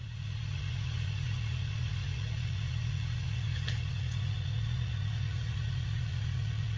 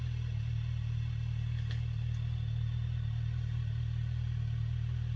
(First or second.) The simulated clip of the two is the first